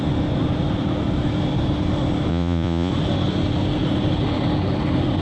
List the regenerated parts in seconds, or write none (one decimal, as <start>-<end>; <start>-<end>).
2.3-2.9